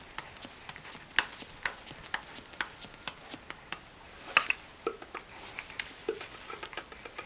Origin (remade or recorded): recorded